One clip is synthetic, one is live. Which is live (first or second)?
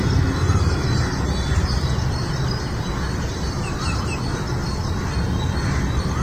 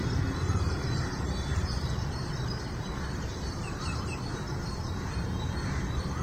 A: first